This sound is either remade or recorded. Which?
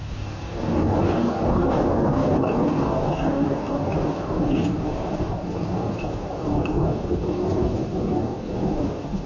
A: remade